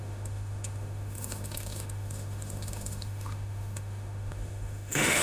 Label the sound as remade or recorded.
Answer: remade